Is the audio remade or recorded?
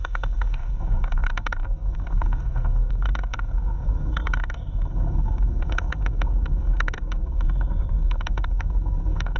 remade